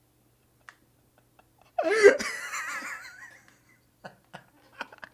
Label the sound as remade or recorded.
recorded